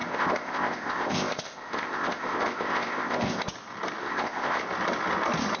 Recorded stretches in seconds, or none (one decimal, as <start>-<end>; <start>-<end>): 3.4-4.0; 4.6-5.6